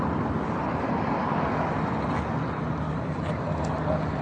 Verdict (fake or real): real